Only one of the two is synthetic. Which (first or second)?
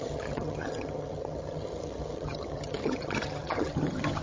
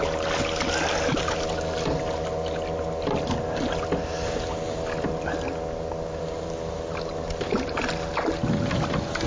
first